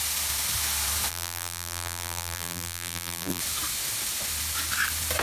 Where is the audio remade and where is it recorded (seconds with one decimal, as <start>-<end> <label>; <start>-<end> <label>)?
0.0-1.1 recorded; 1.1-3.4 remade; 3.4-5.2 recorded